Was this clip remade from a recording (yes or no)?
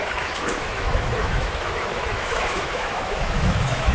yes